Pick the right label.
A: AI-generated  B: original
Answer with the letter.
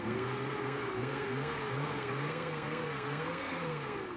A